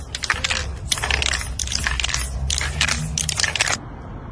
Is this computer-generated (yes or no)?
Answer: no